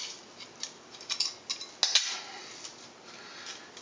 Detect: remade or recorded recorded